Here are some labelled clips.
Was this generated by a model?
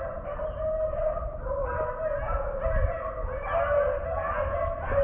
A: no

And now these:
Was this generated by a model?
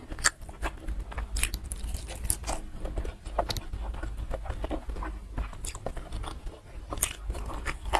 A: no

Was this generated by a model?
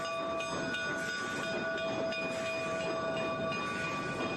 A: no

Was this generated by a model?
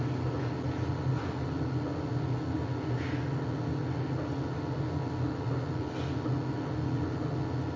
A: no